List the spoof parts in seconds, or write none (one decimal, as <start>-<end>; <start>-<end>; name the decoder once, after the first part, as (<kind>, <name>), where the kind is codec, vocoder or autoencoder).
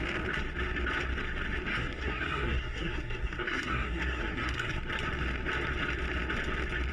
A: 1.7-4.8 (codec, SNAC)